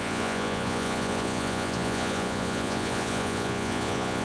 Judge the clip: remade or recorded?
remade